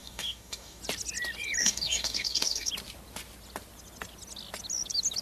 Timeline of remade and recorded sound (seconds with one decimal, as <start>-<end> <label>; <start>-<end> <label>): 0.0-0.8 remade; 0.8-1.6 recorded; 1.6-2.7 remade; 2.7-5.2 recorded